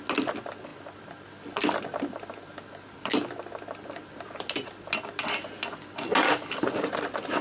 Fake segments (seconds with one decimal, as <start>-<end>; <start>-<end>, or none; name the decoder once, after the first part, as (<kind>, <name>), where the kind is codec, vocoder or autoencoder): none